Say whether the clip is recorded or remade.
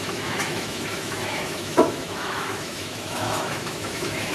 remade